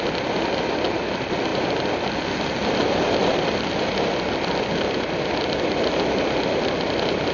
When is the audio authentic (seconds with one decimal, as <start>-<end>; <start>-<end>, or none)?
0.0-7.3